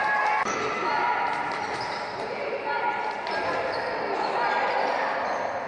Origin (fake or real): real